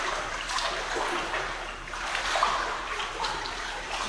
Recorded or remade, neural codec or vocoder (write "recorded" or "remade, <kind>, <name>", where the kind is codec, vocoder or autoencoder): remade, vocoder, BigVGAN v2